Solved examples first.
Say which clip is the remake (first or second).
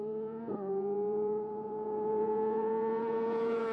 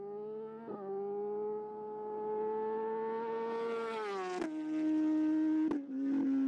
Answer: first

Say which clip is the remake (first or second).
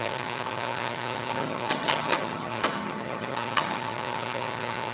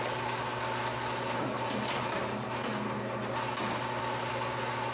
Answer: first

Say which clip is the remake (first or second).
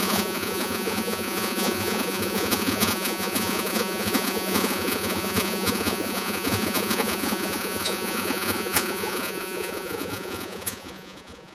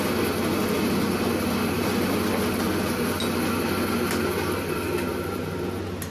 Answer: first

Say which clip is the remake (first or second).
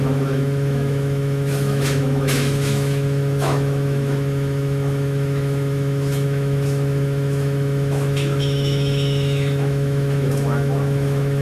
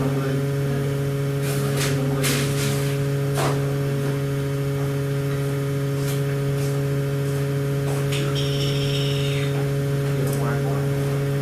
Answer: first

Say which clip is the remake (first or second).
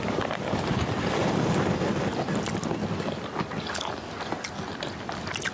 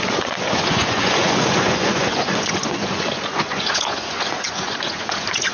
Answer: second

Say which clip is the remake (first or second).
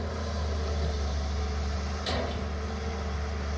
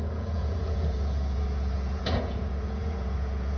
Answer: second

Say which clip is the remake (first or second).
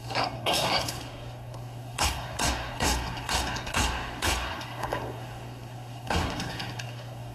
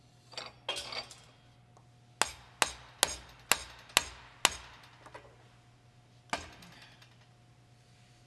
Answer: first